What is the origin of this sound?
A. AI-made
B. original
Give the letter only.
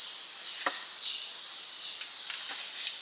B